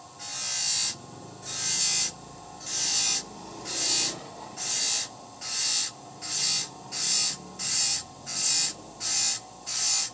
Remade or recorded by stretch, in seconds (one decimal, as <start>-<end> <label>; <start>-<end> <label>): 0.0-10.1 recorded